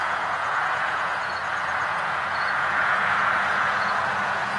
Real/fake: fake